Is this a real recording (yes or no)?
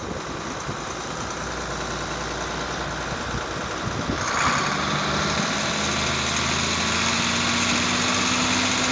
yes